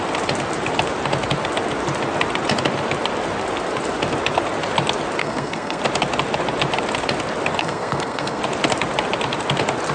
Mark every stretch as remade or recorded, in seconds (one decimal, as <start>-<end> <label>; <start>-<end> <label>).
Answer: 0.0-5.2 recorded; 5.2-5.8 remade; 5.8-7.6 recorded; 7.6-8.4 remade; 8.4-9.9 recorded